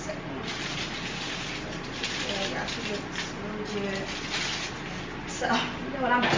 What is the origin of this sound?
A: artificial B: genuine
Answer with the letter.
B